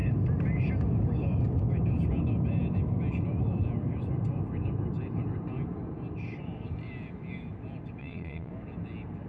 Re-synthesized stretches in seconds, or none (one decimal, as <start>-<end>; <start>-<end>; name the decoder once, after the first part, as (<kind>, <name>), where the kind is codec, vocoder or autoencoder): 8.0-8.5 (vocoder, Vocos)